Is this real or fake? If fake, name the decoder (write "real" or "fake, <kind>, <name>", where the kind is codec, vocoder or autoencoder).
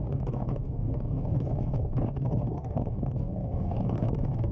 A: fake, codec, DAC